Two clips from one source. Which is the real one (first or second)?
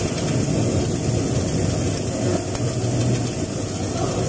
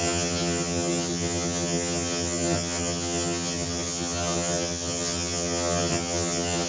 first